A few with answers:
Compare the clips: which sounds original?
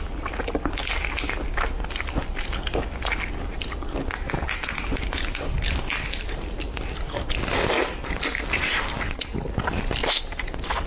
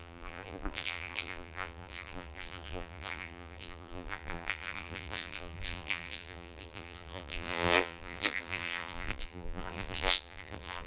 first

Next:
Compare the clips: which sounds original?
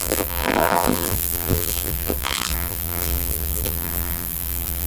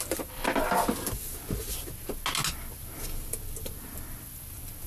second